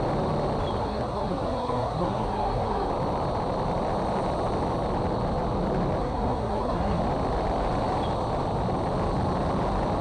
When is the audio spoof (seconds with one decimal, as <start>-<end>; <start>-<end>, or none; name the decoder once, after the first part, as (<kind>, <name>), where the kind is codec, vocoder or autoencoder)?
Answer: 0.8-2.9 (codec, SNAC); 6.0-7.0